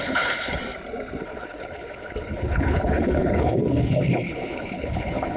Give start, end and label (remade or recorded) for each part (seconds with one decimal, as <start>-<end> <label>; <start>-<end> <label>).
0.0-0.6 remade; 0.6-1.2 recorded; 1.2-5.4 remade